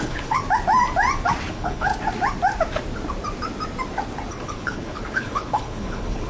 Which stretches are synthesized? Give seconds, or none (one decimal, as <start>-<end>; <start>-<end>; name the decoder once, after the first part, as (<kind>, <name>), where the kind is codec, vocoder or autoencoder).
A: 0.0-0.4 (codec, HILCodec); 1.5-1.9; 4.3-6.3

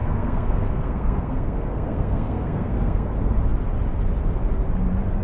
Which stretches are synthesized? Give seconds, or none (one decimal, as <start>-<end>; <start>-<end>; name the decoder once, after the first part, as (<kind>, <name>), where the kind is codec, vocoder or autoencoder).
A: 0.0-3.1 (codec, SNAC)